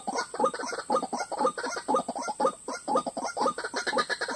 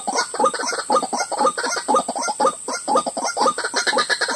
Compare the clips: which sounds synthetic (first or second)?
first